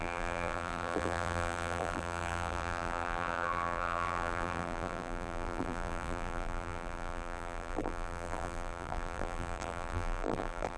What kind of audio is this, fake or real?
fake